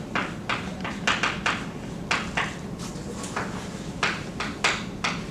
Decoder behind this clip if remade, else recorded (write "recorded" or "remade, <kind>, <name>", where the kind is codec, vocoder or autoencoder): recorded